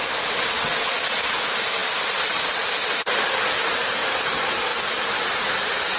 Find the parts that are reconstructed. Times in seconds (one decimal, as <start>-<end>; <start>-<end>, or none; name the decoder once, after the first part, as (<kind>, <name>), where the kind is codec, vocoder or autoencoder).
1.3-6.0 (vocoder, BigVGAN v2)